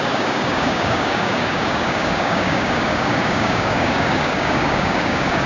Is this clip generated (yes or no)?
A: yes